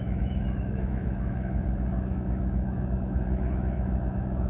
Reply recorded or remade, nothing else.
remade